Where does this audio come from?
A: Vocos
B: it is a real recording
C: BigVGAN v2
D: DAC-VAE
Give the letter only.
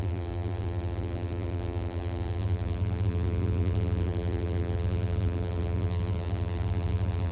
C